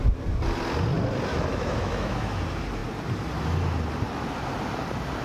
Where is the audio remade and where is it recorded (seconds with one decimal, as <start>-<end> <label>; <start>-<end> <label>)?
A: 0.0-1.3 recorded; 1.3-2.4 remade; 2.4-5.2 recorded